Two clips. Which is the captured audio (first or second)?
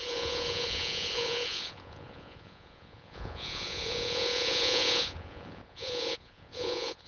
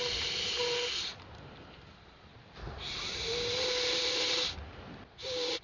second